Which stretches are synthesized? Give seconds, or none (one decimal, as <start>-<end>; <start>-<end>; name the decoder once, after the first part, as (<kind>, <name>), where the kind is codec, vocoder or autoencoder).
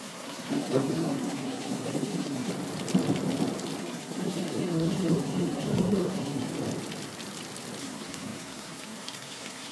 0.0-2.5 (codec, SNAC); 3.8-6.5; 7.8-9.7